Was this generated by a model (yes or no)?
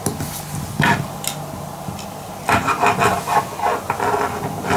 no